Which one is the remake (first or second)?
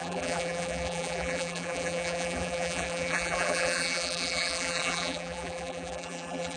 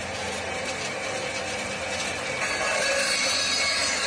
first